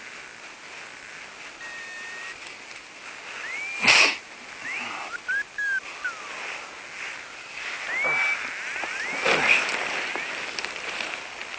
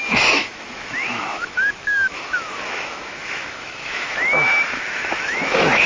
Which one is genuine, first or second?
first